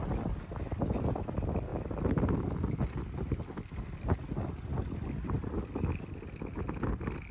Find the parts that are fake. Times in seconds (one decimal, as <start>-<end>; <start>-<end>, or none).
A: none